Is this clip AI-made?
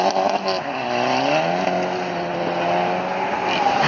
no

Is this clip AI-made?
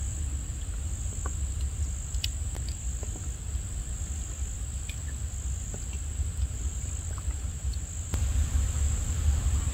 no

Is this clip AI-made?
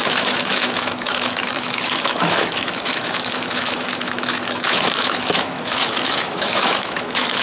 yes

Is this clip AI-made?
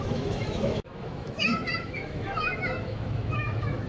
yes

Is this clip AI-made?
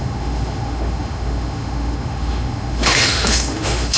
yes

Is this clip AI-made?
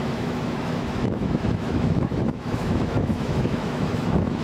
yes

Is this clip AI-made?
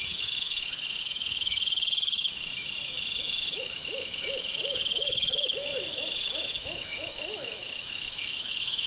yes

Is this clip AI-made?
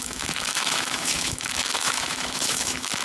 yes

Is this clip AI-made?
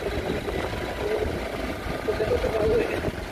no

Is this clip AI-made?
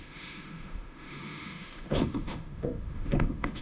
yes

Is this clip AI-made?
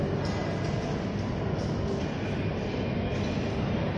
no